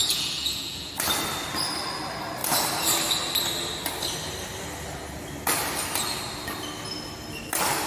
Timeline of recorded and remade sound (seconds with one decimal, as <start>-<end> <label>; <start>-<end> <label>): 0.0-0.9 remade; 0.9-7.9 recorded